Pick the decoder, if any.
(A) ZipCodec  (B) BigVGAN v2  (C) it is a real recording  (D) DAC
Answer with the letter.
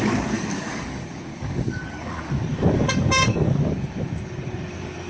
D